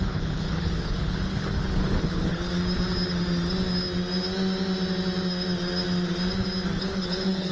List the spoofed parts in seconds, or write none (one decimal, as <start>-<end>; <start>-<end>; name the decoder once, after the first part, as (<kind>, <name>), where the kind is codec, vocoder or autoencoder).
0.0-2.5 (codec, HILCodec); 6.8-7.5